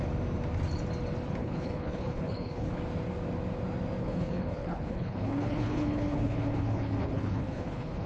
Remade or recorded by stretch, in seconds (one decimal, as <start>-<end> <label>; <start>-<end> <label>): 0.0-1.4 recorded; 1.4-2.8 remade; 2.8-4.0 recorded; 4.0-8.1 remade